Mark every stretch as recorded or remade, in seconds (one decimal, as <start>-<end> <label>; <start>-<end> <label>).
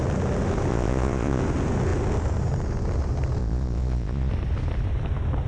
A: 0.0-0.7 recorded; 0.7-1.4 remade; 1.4-3.4 recorded; 3.4-4.3 remade; 4.3-5.5 recorded